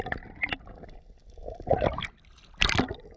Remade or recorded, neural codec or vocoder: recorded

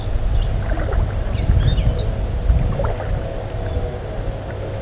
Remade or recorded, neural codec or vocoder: recorded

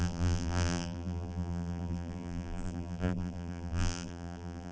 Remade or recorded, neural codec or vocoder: remade, vocoder, BigVGAN v2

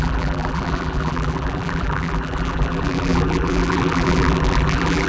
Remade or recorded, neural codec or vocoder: remade, vocoder, BigVGAN v2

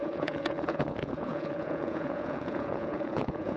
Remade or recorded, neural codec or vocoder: remade, vocoder, Vocos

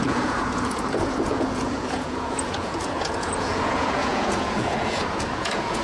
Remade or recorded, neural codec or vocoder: remade, vocoder, Vocos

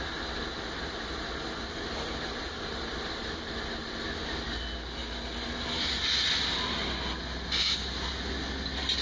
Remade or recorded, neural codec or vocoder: recorded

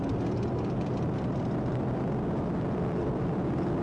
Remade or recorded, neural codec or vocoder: remade, vocoder, BigVGAN v2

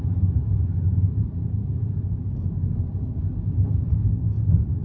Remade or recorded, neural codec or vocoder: recorded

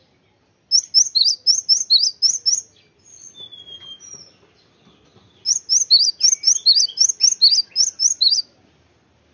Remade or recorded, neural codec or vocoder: recorded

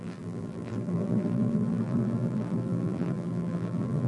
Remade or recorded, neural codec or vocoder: remade, vocoder, BigVGAN v2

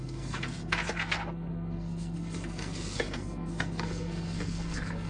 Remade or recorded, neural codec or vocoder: remade, codec, SNAC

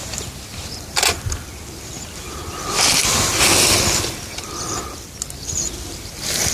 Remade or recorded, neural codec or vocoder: recorded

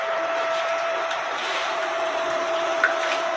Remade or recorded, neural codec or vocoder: remade, vocoder, BigVGAN v2